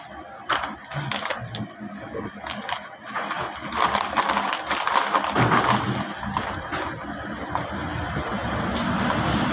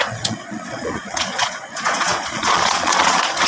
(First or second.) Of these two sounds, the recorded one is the first